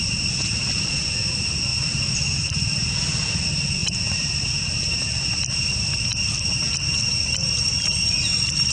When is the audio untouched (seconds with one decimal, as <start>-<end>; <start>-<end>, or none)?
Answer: 0.0-1.7; 3.1-3.8; 5.9-8.7